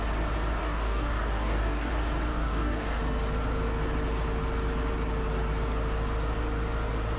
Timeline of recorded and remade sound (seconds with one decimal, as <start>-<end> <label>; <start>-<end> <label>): 0.0-0.6 recorded; 0.6-1.9 remade; 1.9-2.3 recorded; 2.3-3.0 remade; 3.0-7.2 recorded